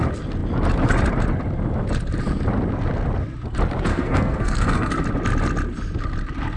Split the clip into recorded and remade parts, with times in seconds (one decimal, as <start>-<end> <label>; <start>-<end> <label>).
0.0-3.9 recorded; 3.9-4.9 remade; 4.9-6.6 recorded